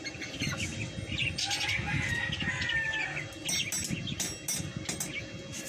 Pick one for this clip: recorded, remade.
recorded